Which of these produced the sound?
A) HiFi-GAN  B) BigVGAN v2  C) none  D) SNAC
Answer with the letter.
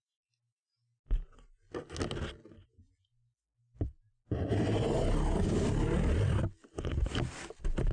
C